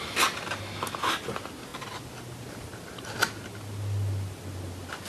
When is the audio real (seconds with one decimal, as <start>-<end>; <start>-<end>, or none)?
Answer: 0.0-5.1